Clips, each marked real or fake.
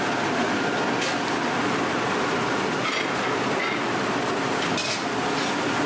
real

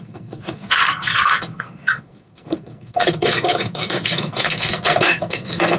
fake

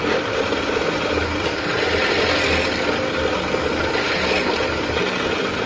real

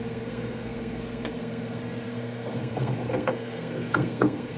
fake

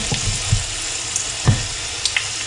real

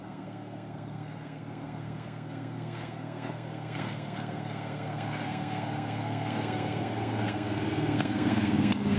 fake